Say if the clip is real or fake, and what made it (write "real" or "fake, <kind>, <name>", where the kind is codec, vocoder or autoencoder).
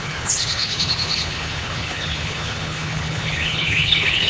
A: fake, codec, HILCodec